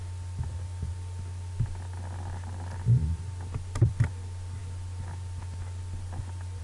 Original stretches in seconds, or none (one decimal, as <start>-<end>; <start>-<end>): 0.0-6.6